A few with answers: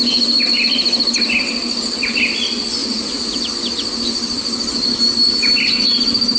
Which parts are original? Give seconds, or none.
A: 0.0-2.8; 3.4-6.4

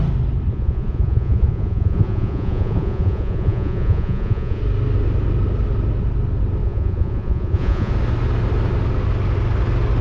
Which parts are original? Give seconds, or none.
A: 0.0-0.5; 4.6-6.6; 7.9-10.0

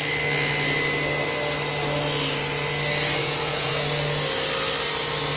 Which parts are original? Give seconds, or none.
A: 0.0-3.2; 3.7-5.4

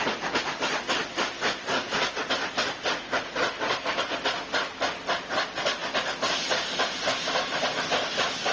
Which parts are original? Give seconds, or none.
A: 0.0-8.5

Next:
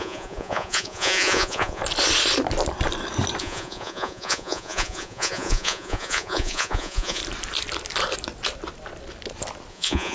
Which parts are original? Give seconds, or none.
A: 1.8-3.4; 7.2-9.7